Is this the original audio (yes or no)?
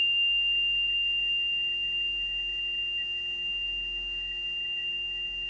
no